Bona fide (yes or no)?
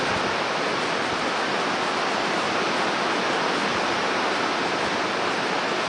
yes